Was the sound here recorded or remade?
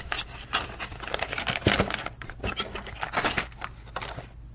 recorded